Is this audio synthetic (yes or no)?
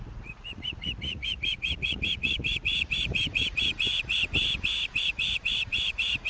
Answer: yes